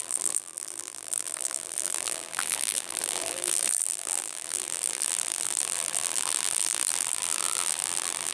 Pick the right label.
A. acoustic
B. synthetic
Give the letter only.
B